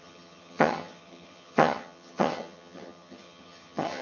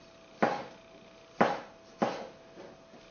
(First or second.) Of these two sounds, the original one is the second